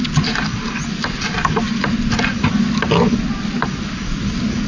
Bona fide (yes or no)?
yes